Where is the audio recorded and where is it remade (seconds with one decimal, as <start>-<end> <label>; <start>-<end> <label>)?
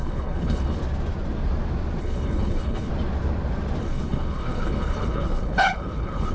0.0-0.8 remade; 0.8-2.0 recorded; 2.0-2.9 remade; 2.9-3.8 recorded; 3.8-6.3 remade